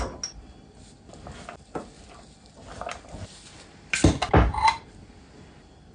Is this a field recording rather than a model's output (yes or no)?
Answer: yes